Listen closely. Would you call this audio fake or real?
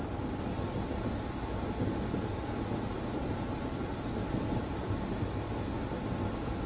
real